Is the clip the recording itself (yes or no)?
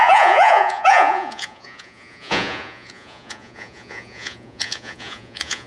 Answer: no